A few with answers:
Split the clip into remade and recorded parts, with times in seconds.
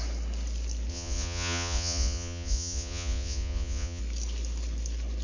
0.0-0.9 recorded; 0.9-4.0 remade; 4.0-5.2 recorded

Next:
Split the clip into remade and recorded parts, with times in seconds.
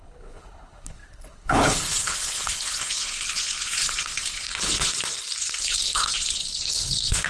0.0-4.9 remade; 4.9-5.6 recorded; 5.6-7.3 remade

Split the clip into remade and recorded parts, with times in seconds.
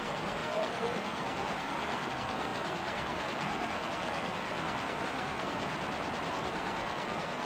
0.0-5.7 remade; 5.7-6.3 recorded; 6.3-7.5 remade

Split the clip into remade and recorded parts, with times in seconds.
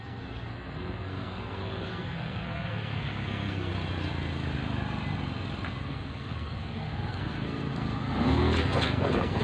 0.0-3.7 remade; 3.7-5.8 recorded; 5.8-9.4 remade